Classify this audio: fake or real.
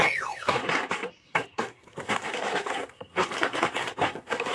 fake